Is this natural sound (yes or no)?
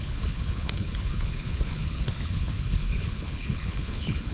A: no